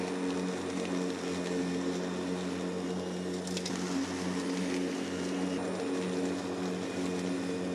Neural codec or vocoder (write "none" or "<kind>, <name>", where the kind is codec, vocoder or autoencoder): none